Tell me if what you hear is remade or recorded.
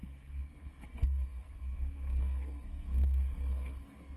remade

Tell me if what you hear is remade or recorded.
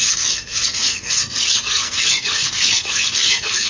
remade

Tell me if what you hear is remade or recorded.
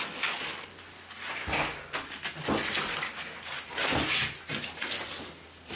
recorded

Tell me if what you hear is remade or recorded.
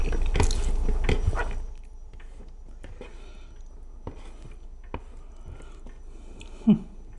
recorded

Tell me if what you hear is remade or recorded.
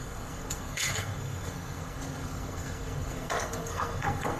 remade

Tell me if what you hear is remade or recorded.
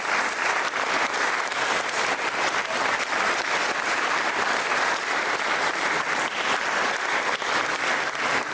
recorded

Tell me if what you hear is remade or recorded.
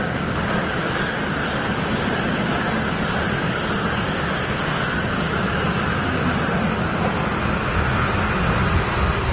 recorded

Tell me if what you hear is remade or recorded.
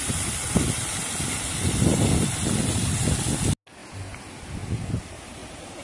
recorded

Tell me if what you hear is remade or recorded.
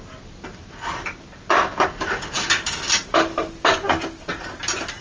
recorded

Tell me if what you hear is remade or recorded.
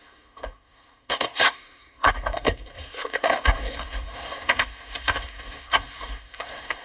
remade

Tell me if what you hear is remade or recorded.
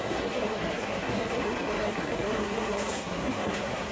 remade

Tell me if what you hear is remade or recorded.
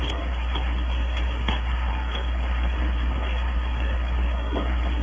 remade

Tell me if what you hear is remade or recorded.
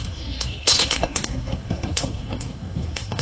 remade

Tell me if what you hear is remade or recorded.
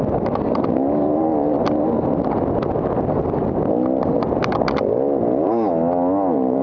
recorded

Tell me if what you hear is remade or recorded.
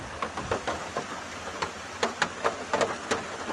recorded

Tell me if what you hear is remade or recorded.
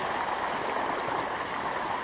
recorded